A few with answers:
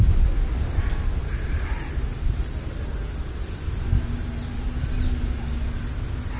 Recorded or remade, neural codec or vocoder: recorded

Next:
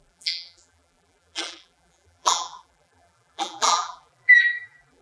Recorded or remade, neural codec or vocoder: remade, vocoder, BigVGAN v2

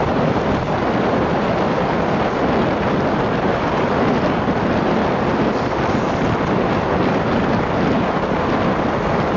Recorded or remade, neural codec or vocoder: recorded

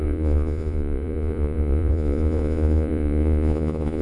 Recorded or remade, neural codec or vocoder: remade, vocoder, Vocos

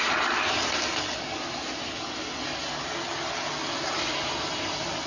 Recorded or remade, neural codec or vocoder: recorded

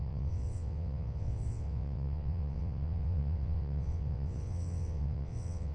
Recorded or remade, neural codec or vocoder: remade, vocoder, WaveNeXt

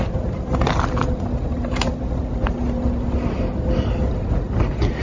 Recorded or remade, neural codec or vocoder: recorded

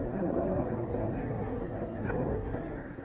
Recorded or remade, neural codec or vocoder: remade, codec, SNAC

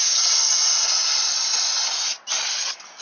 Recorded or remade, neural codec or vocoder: recorded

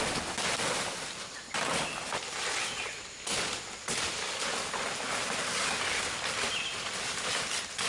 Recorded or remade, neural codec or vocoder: recorded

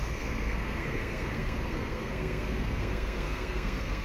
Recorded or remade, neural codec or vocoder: remade, codec, SNAC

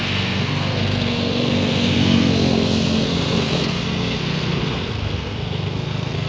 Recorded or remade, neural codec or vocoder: remade, codec, SNAC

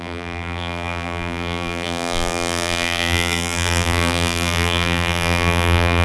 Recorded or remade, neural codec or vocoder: remade, vocoder, BigVGAN v2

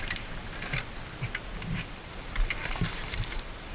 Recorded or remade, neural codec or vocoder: remade, vocoder, BigVGAN v2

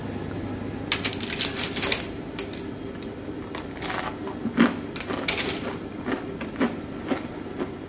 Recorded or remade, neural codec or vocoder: recorded